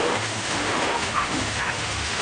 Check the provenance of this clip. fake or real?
fake